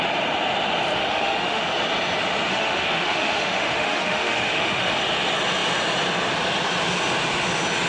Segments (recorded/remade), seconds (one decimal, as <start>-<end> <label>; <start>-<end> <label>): 0.0-1.0 recorded; 1.0-1.6 remade; 1.6-2.5 recorded; 2.5-4.9 remade; 4.9-7.9 recorded